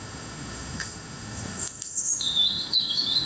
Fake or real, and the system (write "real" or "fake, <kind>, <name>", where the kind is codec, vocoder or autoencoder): fake, autoencoder, DAC-VAE